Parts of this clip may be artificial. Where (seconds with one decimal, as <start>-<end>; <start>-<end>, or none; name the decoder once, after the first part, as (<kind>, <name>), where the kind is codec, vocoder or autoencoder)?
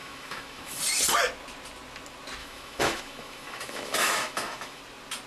0.0-0.8 (autoencoder, DAC-VAE); 2.4-4.8